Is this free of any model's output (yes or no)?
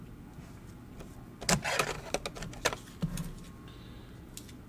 yes